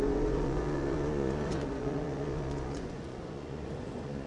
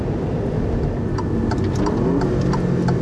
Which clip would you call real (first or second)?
second